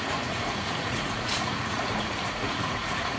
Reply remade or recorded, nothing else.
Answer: remade